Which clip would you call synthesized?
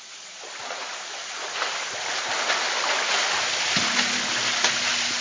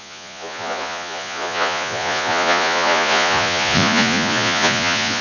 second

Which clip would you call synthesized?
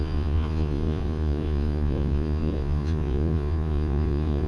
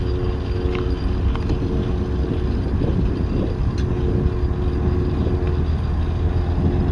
first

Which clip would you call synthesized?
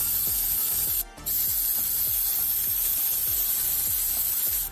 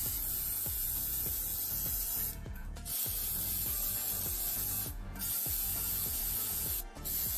second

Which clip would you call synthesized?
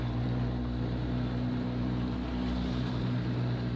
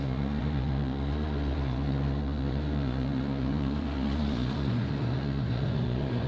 second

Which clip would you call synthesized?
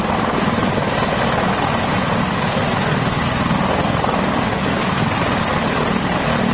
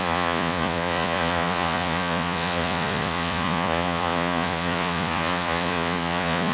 second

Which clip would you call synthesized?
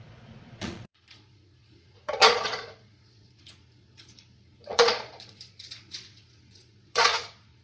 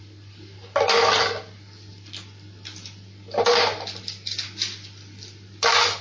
first